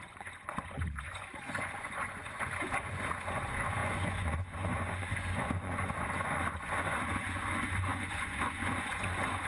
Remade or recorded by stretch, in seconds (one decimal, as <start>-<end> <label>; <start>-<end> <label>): 0.0-9.5 remade